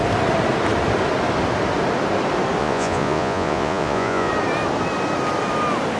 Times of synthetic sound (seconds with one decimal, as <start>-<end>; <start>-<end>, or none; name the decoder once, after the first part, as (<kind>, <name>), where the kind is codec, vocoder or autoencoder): 2.6-4.3 (vocoder, Vocos)

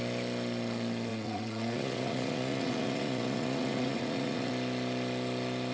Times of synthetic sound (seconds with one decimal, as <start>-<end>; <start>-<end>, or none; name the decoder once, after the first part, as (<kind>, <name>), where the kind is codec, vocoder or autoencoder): 1.1-4.5 (vocoder, Vocos)

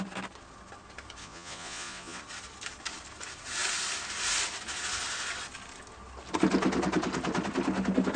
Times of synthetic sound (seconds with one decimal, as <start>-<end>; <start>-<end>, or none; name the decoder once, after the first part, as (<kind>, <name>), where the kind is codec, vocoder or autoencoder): 1.2-2.2 (vocoder, Vocos)

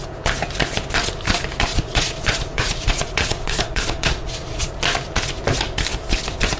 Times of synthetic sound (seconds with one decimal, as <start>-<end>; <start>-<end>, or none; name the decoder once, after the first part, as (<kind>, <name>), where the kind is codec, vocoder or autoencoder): 1.7-4.7 (vocoder, Vocos)